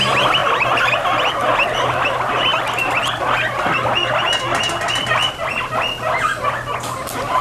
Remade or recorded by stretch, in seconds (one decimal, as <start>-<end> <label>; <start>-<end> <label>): 0.0-7.4 recorded